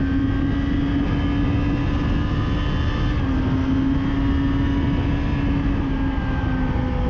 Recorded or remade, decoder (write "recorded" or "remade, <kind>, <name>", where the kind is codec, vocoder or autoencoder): recorded